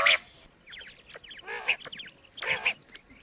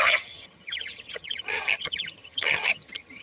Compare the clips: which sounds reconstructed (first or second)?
second